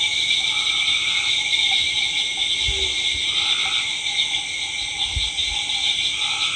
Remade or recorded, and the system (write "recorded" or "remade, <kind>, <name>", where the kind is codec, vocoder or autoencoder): recorded